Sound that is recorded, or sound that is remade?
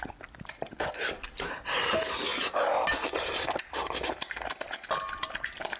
recorded